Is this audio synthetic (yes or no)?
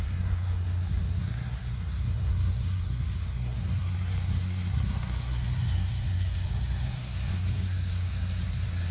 yes